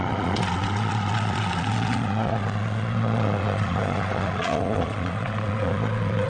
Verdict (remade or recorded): remade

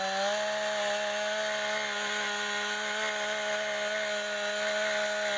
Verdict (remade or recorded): recorded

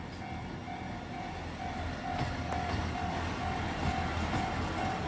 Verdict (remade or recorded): recorded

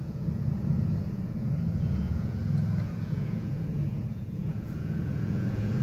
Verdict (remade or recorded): remade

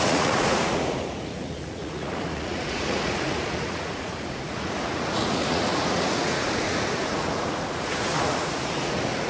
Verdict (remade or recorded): remade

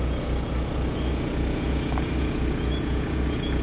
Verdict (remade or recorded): remade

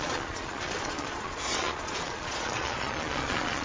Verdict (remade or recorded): remade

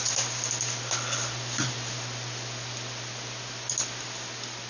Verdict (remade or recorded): recorded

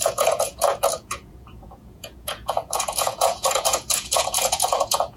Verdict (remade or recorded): remade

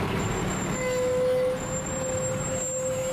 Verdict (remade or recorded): recorded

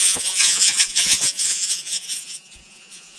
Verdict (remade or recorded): remade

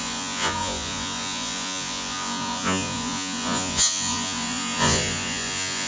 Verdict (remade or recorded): remade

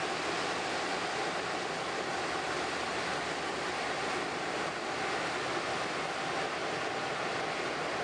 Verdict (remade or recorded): recorded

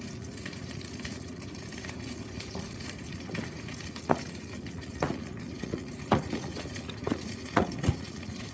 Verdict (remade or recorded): remade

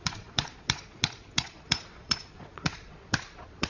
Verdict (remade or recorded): remade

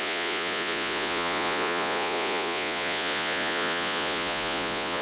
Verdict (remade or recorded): remade